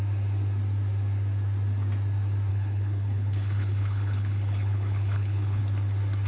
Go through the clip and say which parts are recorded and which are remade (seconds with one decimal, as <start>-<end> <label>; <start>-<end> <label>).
0.0-2.5 recorded; 2.5-5.6 remade; 5.6-6.3 recorded